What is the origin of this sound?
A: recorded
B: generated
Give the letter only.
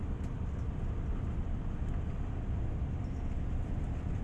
A